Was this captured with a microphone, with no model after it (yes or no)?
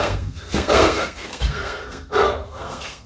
no